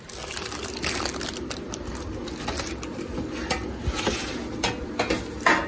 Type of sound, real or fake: real